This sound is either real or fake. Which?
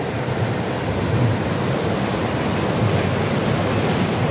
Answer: real